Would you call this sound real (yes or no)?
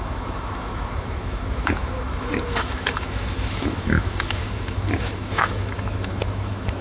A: no